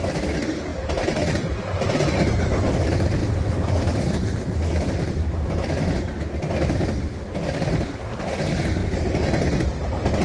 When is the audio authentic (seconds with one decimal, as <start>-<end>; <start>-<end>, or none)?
0.0-10.2